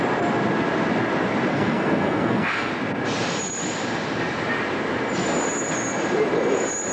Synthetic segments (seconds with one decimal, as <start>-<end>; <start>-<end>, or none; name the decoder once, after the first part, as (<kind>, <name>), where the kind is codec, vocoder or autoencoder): 1.5-2.7 (codec, SNAC)